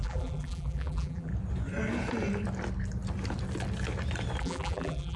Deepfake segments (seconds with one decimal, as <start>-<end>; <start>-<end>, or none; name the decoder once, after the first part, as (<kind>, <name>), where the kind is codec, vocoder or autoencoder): 0.0-1.3 (vocoder, BigVGAN v2); 4.4-5.2